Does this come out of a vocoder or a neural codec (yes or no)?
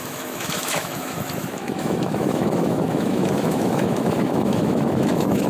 yes